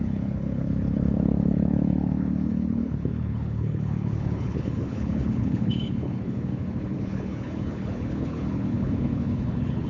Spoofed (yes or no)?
yes